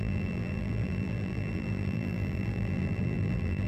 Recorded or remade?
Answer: remade